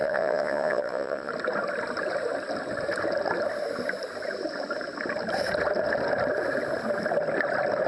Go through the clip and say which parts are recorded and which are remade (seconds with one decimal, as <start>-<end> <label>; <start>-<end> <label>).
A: 0.0-1.3 remade; 1.3-7.9 recorded